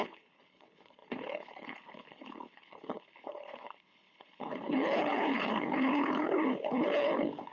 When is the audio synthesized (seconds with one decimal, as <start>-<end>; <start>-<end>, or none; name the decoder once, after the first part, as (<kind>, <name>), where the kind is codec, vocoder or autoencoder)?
0.0-7.5 (codec, HILCodec)